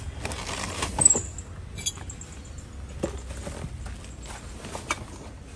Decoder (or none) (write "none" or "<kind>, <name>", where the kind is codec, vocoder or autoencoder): none